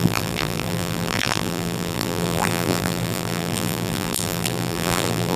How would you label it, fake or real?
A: fake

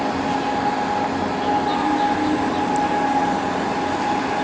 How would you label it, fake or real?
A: real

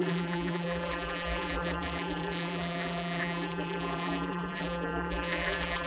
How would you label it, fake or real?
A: fake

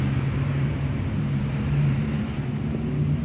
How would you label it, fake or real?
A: fake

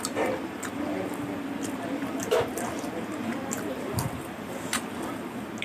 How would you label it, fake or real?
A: real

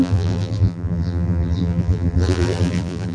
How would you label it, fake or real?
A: fake